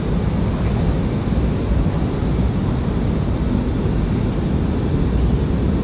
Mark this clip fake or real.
real